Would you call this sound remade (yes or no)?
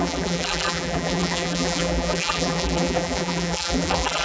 yes